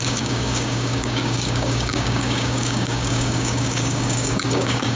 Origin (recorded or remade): remade